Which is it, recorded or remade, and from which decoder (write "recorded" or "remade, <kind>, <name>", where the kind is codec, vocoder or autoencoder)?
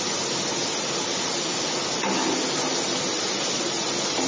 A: recorded